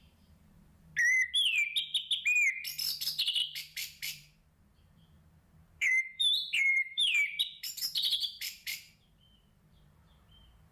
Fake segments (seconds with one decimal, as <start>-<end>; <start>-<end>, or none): 0.0-0.9; 3.4-10.7